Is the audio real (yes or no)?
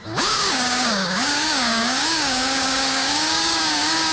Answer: no